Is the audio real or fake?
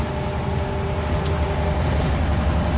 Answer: real